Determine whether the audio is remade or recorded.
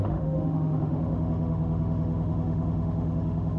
remade